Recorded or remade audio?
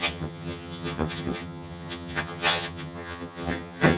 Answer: remade